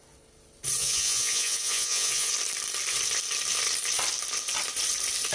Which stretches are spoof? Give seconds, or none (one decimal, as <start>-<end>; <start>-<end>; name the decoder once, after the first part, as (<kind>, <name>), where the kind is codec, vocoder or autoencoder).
0.8-2.3 (vocoder, Vocos)

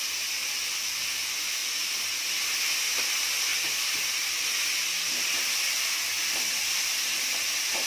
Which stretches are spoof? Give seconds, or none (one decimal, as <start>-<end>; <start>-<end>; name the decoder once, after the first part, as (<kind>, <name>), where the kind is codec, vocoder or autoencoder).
3.5-4.0 (vocoder, BigVGAN v2)

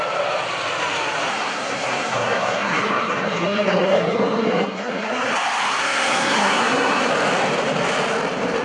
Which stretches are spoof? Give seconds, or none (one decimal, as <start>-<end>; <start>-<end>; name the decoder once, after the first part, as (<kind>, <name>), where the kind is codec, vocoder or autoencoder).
1.3-5.3 (codec, SNAC); 5.8-7.1